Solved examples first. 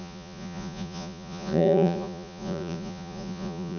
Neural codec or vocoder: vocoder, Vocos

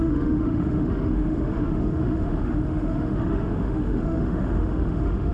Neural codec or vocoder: autoencoder, DAC-VAE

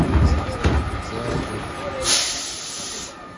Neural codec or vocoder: none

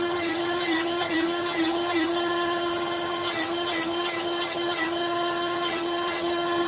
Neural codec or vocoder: vocoder, HiFi-GAN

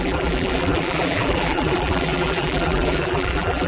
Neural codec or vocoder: vocoder, BigVGAN v2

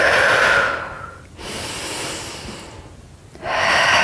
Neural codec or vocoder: none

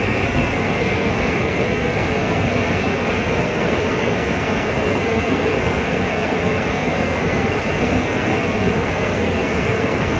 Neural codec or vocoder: codec, SNAC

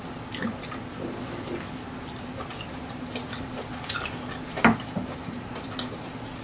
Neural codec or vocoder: none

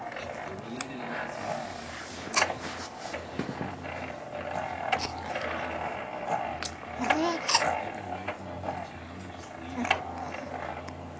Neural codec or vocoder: none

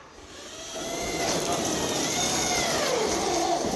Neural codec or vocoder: none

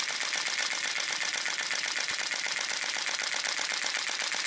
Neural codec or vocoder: none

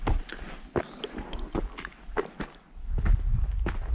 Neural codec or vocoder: none